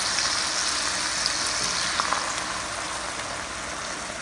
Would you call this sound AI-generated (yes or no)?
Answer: no